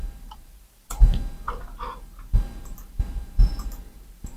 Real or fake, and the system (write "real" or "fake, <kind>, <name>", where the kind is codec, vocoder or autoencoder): fake, vocoder, BigVGAN v2